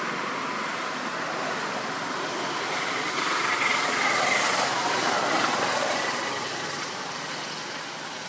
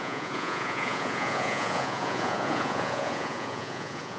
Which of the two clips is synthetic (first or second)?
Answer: second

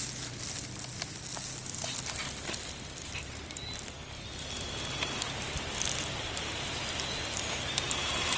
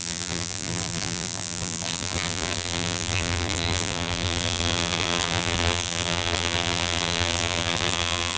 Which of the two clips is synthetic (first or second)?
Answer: second